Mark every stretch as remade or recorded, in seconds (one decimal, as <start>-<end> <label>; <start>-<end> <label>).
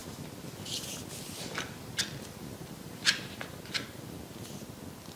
0.0-5.2 recorded